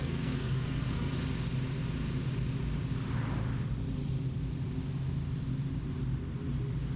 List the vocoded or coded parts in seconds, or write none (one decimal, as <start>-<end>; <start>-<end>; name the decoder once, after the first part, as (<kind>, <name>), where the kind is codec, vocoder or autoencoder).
0.0-1.1 (codec, SNAC)